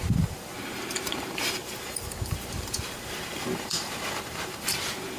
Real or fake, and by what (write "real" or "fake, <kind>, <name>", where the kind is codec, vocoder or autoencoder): fake, vocoder, BigVGAN v2